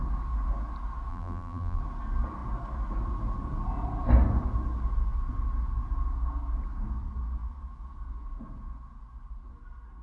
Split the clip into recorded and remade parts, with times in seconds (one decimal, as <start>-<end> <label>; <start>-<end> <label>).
0.0-1.1 recorded; 1.1-1.8 remade; 1.8-10.0 recorded